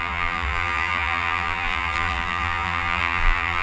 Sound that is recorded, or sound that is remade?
remade